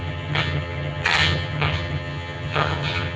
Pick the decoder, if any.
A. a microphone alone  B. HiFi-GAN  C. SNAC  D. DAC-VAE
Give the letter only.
B